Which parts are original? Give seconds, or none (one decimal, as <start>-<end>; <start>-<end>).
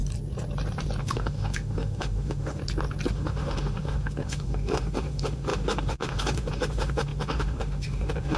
0.0-1.0; 2.6-3.1